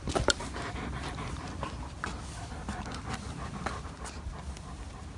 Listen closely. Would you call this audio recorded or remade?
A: recorded